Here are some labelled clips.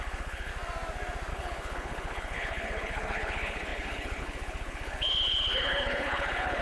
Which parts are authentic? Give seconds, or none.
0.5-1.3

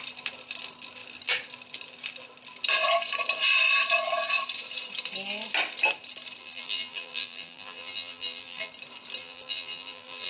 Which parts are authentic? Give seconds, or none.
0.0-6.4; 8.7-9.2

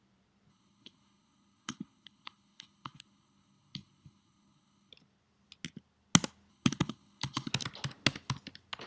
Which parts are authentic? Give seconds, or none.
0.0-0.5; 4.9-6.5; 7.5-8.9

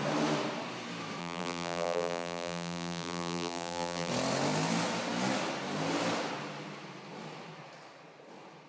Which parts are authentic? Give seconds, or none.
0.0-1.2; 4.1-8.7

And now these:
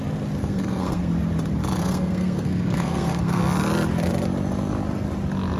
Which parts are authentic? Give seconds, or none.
0.0-0.4; 1.1-1.8; 3.4-5.6

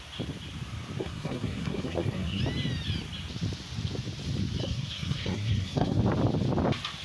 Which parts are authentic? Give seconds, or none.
0.0-1.0; 2.4-4.6; 6.0-7.0